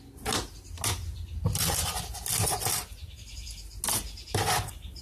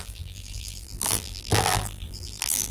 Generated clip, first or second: second